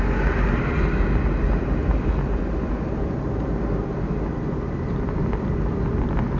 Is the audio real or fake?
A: real